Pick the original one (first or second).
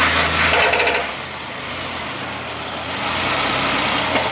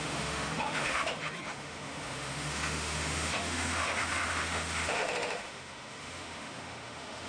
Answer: first